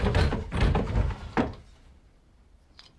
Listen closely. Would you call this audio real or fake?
real